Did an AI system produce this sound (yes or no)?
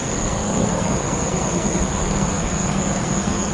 yes